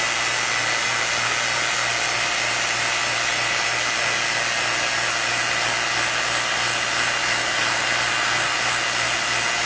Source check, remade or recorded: recorded